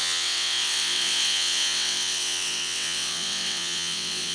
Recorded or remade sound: remade